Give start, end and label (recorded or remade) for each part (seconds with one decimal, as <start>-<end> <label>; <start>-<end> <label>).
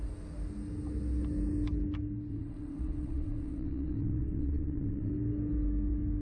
0.0-2.3 recorded; 2.3-5.1 remade; 5.1-6.2 recorded